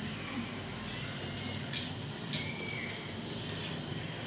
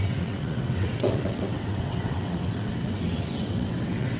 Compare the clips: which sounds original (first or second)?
first